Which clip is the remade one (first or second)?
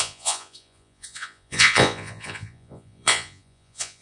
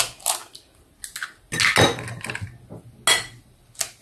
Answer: first